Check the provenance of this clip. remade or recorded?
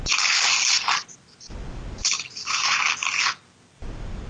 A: recorded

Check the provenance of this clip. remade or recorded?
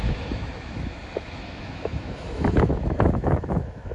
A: remade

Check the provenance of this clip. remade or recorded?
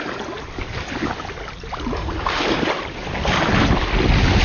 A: recorded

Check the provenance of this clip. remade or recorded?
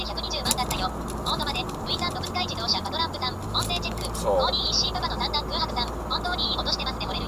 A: recorded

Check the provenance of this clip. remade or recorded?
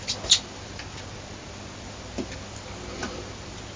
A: recorded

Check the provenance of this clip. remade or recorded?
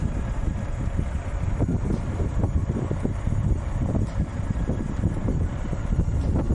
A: remade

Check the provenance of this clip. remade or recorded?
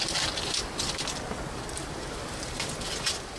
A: recorded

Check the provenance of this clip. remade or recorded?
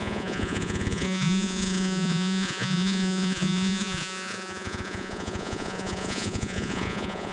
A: remade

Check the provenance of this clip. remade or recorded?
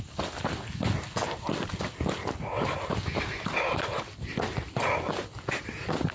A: recorded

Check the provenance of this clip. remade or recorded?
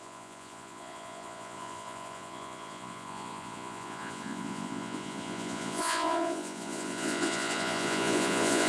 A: remade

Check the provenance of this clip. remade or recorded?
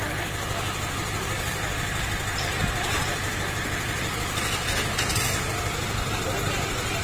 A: recorded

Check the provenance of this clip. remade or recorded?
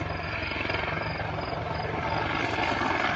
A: recorded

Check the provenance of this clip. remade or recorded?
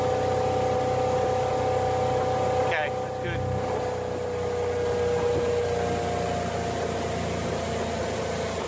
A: recorded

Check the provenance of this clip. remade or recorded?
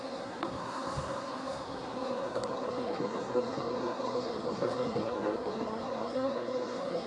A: remade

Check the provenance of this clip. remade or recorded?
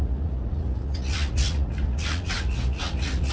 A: remade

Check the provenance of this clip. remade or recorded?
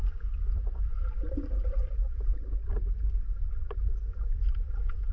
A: recorded